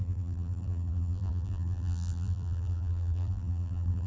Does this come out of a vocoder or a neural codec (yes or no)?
yes